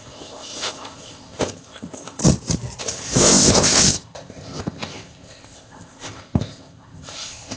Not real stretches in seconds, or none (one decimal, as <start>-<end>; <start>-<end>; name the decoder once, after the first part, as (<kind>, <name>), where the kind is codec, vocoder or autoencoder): 0.0-2.2 (codec, ZipCodec); 2.8-7.6